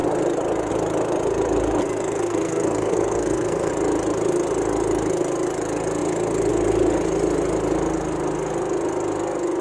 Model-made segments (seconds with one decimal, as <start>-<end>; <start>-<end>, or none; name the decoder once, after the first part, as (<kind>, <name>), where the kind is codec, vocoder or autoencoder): 1.8-3.7 (codec, SNAC)